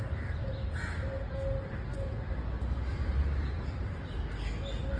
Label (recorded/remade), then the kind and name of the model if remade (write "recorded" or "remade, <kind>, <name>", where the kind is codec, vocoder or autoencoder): recorded